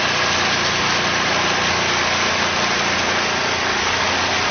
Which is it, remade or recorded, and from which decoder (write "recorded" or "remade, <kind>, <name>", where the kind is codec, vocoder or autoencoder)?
recorded